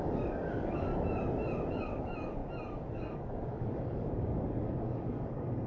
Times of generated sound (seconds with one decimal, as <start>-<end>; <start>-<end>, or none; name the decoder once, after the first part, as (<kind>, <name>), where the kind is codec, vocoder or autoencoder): 0.0-0.9 (codec, DAC); 1.7-2.4; 2.9-5.7